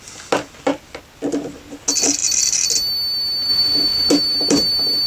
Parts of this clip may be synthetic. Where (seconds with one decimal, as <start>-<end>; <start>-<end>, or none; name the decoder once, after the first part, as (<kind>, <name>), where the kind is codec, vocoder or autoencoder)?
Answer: 3.5-4.1 (vocoder, Vocos)